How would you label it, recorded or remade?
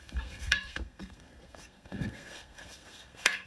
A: remade